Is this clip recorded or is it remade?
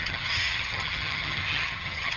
remade